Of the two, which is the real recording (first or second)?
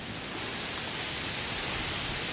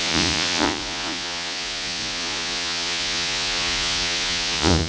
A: first